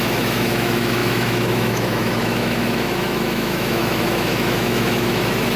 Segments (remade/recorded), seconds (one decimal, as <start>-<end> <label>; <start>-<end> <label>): 0.0-5.6 remade

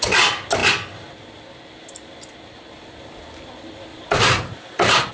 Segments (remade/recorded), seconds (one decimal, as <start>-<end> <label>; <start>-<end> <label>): 0.0-3.9 recorded; 3.9-5.1 remade

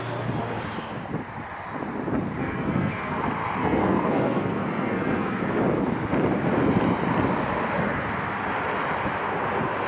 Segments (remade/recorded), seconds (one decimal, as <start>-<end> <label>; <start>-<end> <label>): 0.0-2.4 recorded; 2.4-3.2 remade; 3.2-3.6 recorded; 3.6-5.4 remade; 5.4-9.9 recorded

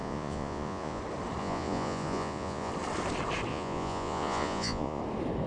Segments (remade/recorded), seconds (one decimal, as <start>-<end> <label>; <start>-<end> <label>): 0.0-1.0 remade; 1.0-1.4 recorded; 1.4-2.7 remade; 2.7-3.5 recorded; 3.5-5.0 remade; 5.0-5.5 recorded

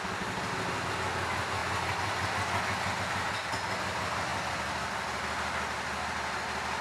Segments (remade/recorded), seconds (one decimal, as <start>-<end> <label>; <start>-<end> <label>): 0.0-6.8 recorded

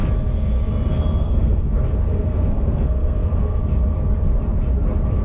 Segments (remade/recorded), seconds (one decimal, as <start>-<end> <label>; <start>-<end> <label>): 0.0-1.2 recorded; 1.2-1.7 remade; 1.7-2.1 recorded; 2.1-3.6 remade; 3.6-5.2 recorded

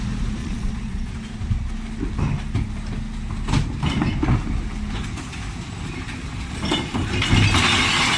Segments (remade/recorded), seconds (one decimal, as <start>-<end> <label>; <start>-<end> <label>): 0.0-0.4 recorded; 0.4-1.1 remade; 1.1-8.2 recorded

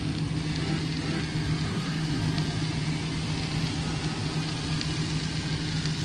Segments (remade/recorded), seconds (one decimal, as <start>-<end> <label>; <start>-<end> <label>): 0.0-1.7 recorded; 1.7-2.2 remade; 2.2-6.0 recorded